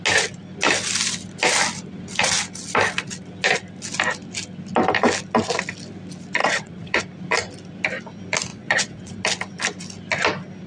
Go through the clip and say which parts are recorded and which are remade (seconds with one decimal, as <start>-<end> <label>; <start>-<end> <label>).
0.0-6.4 recorded; 6.4-7.0 remade; 7.0-8.5 recorded; 8.5-9.1 remade; 9.1-10.7 recorded